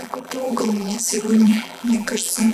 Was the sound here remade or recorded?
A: remade